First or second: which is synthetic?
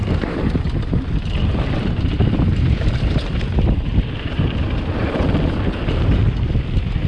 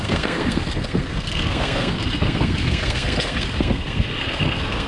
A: second